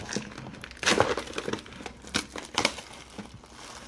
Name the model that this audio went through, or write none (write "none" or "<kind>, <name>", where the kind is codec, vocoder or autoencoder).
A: none